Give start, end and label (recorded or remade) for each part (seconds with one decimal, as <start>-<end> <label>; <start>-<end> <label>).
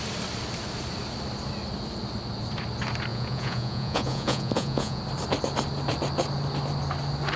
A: 0.0-3.1 recorded; 3.1-5.0 remade; 5.0-7.4 recorded